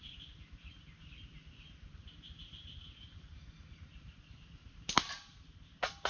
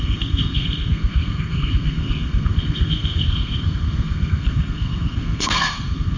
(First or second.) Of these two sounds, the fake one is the second